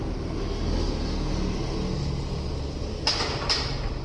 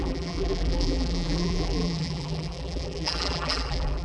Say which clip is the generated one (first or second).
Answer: second